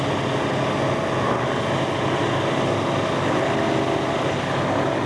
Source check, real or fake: real